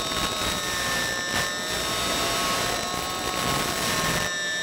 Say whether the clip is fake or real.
real